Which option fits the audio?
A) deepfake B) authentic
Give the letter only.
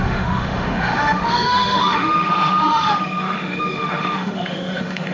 A